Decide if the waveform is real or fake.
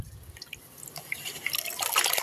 real